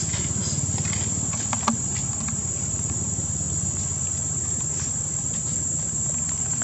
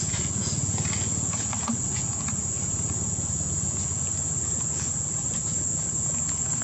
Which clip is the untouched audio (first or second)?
first